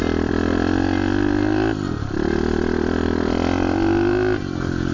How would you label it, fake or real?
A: real